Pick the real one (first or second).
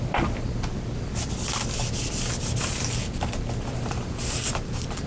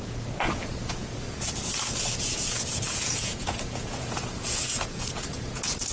first